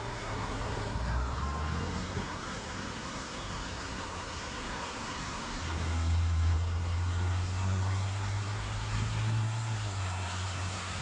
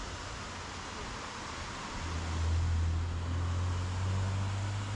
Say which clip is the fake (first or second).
first